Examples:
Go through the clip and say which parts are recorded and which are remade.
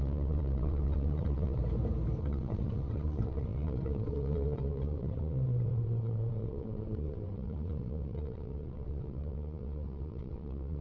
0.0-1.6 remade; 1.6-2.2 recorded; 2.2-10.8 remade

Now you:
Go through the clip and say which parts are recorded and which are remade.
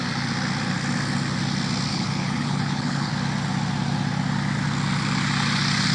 0.0-1.9 recorded; 1.9-3.1 remade; 3.1-5.9 recorded